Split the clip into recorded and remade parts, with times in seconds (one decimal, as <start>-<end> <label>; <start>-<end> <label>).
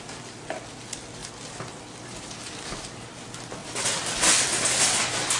0.0-3.6 recorded; 3.6-4.8 remade; 4.8-5.4 recorded